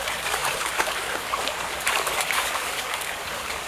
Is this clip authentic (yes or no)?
no